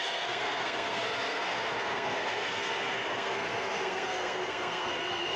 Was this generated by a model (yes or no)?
yes